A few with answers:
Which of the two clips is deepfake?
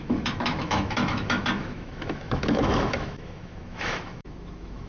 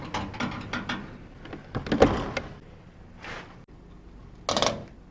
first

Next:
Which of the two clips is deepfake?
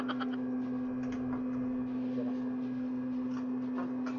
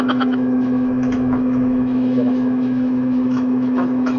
second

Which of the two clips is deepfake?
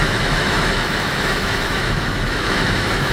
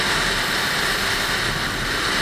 first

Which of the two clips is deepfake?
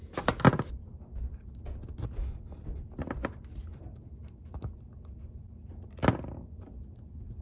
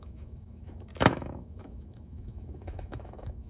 second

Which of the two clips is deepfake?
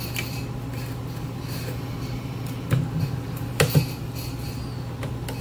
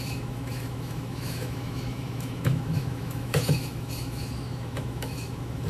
second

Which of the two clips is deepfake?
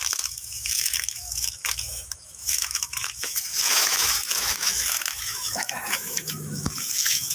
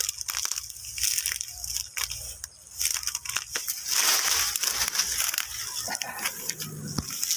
first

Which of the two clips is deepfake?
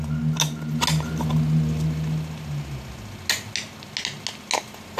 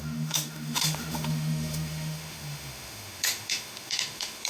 second